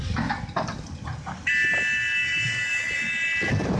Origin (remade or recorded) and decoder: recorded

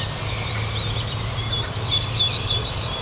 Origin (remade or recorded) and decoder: remade, vocoder, BigVGAN v2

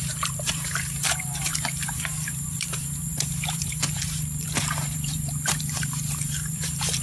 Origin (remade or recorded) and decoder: remade, vocoder, BigVGAN v2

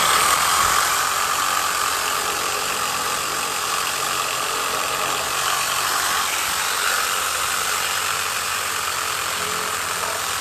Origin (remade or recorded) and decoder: remade, vocoder, BigVGAN v2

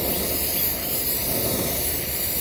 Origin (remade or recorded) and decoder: remade, vocoder, BigVGAN v2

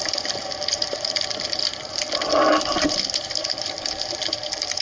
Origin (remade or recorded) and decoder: remade, vocoder, BigVGAN v2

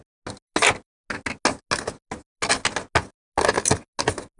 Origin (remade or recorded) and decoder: recorded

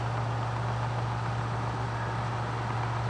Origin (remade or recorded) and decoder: recorded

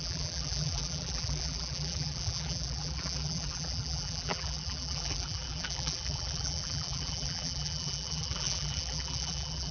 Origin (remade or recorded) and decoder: remade, vocoder, BigVGAN v2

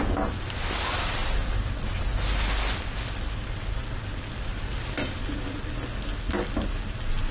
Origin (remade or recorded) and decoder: recorded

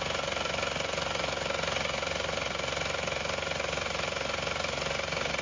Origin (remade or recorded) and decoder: recorded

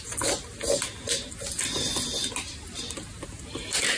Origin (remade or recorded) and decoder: recorded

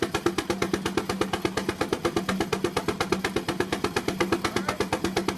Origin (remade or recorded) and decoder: recorded